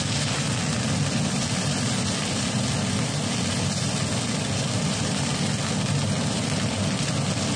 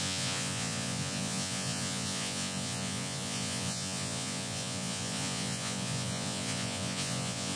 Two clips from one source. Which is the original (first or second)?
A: first